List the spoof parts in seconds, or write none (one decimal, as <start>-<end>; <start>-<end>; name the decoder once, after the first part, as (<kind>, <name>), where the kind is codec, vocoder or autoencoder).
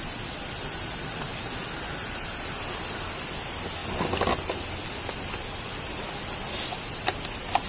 none